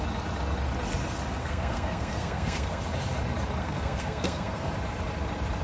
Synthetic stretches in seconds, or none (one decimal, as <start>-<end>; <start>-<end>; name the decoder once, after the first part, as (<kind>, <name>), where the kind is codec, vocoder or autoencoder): 1.4-2.8 (codec, SNAC); 3.6-4.7